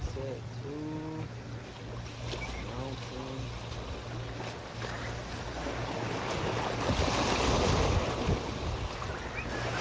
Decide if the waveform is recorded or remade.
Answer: recorded